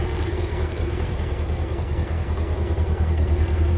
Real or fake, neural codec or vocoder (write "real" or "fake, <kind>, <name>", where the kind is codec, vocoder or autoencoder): fake, codec, SNAC